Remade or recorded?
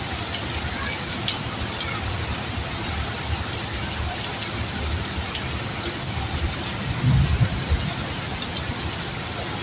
recorded